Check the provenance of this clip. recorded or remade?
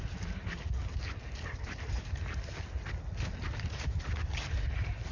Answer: recorded